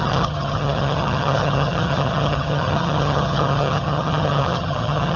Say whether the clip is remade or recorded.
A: remade